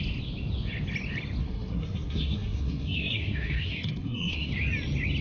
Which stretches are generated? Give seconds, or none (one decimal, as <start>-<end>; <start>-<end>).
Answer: 1.4-4.5

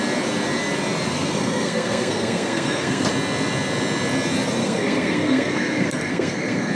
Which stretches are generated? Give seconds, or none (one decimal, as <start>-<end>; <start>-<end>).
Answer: 1.1-3.1; 4.6-6.7